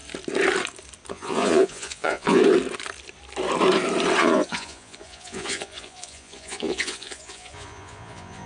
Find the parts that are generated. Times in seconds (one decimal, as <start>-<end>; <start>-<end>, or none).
1.1-2.4; 4.2-8.5